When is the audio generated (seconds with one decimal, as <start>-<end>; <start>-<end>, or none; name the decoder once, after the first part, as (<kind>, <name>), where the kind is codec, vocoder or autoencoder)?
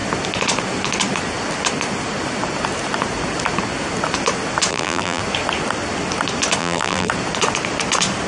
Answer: 4.7-5.2 (vocoder, BigVGAN v2); 6.6-7.1